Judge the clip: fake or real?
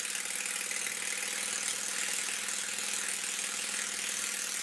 real